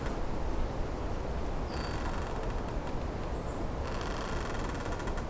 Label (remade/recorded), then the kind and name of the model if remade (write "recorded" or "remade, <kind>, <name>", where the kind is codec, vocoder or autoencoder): recorded